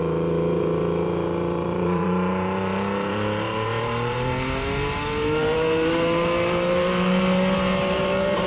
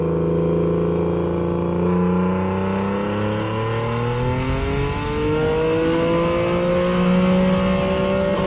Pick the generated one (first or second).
first